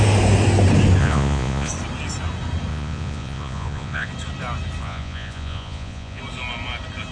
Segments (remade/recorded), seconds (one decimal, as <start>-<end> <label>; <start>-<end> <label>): 0.0-1.0 recorded; 1.0-1.7 remade; 1.7-2.7 recorded; 2.7-4.1 remade; 4.1-4.8 recorded; 4.8-6.2 remade; 6.2-7.1 recorded